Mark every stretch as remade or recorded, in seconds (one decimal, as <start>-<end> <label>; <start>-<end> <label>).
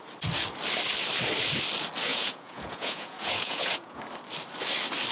0.0-2.1 recorded; 2.1-4.0 remade; 4.0-5.1 recorded